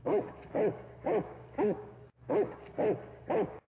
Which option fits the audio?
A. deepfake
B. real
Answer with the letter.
A